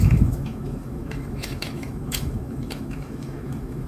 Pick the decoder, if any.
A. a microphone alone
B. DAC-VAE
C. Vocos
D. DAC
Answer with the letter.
B